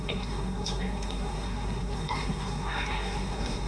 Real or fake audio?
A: fake